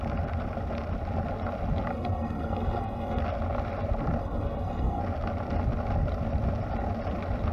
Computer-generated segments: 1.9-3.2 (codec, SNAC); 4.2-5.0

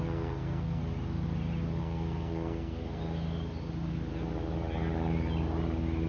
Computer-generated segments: 0.0-0.8 (codec, SNAC); 1.8-3.0

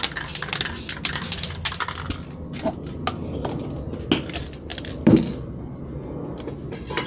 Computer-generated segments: 4.7-5.2 (vocoder, BigVGAN v2)